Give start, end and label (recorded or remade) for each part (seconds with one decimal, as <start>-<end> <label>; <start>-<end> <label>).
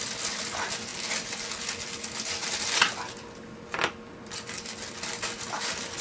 0.0-6.0 recorded